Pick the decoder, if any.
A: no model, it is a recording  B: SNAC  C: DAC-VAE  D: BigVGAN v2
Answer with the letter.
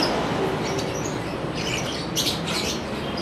D